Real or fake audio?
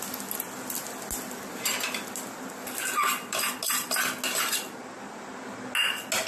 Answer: real